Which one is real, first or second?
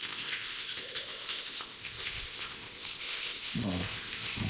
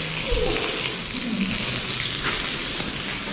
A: second